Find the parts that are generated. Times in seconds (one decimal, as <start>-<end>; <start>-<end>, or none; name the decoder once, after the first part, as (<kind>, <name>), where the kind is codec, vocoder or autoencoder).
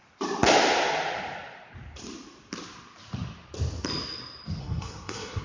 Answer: 4.6-5.4 (codec, SNAC)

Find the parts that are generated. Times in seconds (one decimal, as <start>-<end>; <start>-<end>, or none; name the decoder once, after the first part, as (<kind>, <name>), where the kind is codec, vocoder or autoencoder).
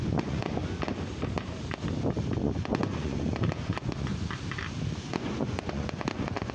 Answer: 0.0-0.6 (vocoder, Vocos); 2.4-4.1; 4.9-6.5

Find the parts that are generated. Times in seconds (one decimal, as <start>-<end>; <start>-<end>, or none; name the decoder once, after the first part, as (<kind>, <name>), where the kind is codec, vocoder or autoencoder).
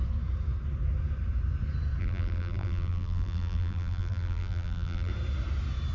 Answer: 2.0-5.1 (vocoder, BigVGAN v2)